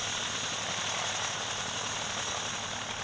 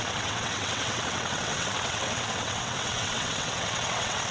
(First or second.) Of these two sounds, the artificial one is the second